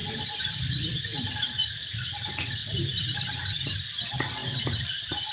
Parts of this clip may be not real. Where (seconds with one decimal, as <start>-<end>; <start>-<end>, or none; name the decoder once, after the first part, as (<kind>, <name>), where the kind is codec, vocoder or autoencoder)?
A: 0.0-1.3 (vocoder, BigVGAN v2); 2.6-3.3